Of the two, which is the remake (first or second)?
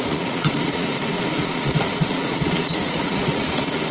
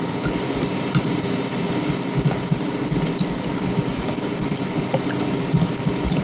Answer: first